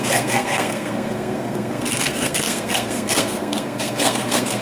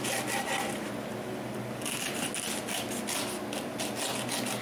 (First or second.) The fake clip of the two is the first